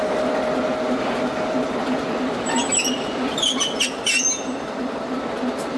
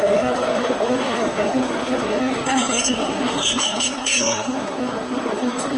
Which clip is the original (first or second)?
first